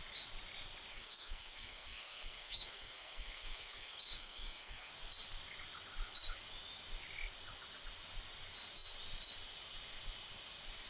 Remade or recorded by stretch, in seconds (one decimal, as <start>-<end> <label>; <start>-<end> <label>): 0.0-0.9 recorded; 0.9-4.9 remade; 4.9-10.9 recorded